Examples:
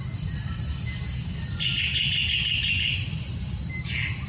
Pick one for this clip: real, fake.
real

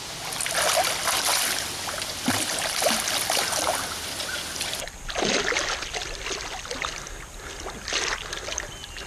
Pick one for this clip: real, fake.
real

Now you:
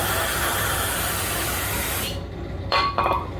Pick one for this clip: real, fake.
real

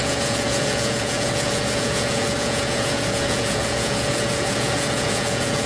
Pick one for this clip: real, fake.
fake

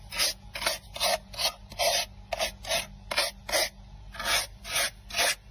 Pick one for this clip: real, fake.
real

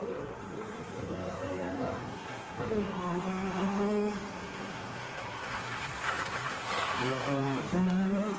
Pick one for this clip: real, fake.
fake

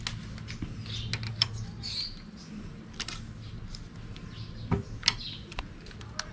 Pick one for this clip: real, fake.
real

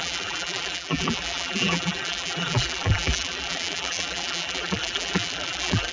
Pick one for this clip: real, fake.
fake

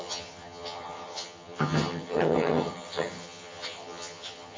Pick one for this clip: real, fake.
fake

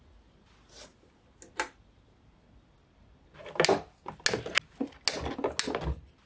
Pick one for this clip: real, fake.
real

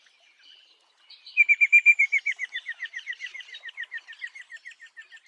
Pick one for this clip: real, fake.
real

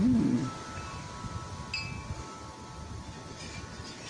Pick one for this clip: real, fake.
real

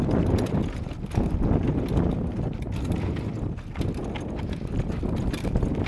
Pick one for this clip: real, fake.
real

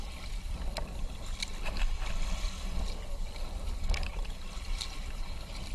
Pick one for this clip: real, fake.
real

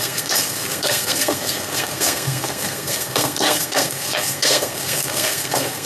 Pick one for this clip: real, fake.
fake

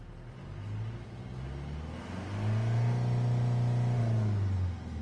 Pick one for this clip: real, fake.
real